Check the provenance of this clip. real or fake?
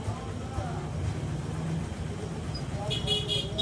real